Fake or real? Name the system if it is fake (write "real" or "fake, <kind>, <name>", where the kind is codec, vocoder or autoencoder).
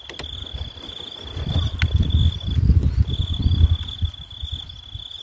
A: real